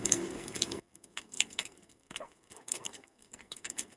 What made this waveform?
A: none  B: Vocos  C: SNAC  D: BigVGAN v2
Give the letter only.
C